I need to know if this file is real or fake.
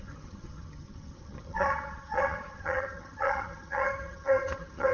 fake